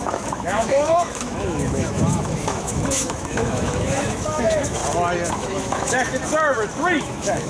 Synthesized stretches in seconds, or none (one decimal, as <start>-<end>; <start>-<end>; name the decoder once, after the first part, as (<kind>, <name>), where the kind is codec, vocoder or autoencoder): 0.0-4.8 (autoencoder, DAC-VAE); 5.3-6.2; 7.0-7.5